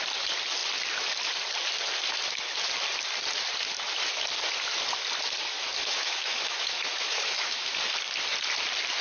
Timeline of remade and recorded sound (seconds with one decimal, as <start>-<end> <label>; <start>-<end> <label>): 0.0-5.7 recorded; 5.7-7.8 remade; 7.8-9.0 recorded

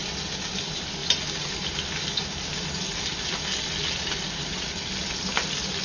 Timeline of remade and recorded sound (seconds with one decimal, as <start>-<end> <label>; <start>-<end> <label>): 0.0-5.8 recorded

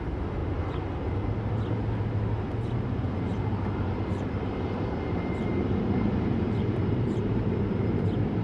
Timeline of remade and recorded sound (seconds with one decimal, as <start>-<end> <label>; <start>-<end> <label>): 0.0-0.4 remade; 0.4-2.8 recorded; 2.8-8.4 remade

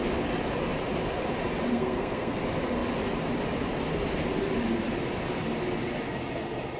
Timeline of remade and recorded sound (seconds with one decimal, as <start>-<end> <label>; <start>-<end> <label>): 0.0-1.7 recorded; 1.7-2.4 remade; 2.4-6.8 recorded

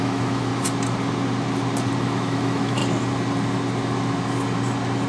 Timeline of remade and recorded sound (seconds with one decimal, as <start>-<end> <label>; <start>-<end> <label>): 0.0-0.5 remade; 0.5-2.0 recorded; 2.0-2.8 remade; 2.8-5.1 recorded

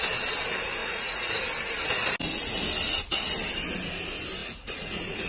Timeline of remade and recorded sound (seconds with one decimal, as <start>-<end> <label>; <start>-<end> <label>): 0.0-0.8 recorded; 0.8-1.4 remade; 1.4-4.4 recorded; 4.4-5.3 remade